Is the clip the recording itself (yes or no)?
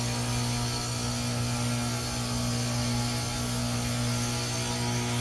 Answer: yes